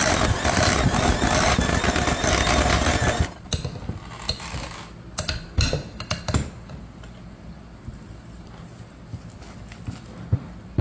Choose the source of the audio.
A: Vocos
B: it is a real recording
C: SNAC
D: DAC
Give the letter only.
B